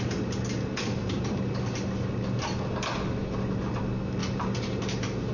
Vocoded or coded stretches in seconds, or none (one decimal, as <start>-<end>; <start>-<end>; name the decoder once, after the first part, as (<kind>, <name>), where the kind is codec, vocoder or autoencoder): 1.0-1.5 (vocoder, BigVGAN v2); 4.2-4.8